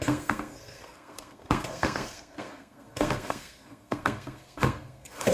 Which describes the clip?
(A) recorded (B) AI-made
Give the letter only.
B